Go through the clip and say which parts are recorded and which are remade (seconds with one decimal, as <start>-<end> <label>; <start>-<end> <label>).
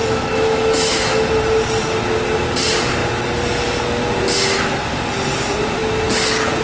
0.0-1.3 remade; 1.3-6.6 recorded